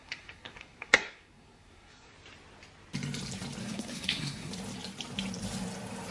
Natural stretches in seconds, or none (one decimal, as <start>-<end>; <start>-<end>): 2.1-3.6; 4.5-6.1